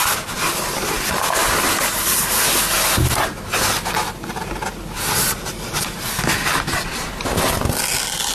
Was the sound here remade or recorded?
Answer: recorded